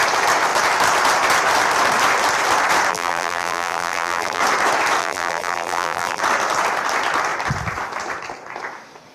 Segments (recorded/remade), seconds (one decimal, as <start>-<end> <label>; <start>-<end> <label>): 0.0-2.9 recorded; 2.9-4.4 remade; 4.4-5.0 recorded; 5.0-6.2 remade; 6.2-9.1 recorded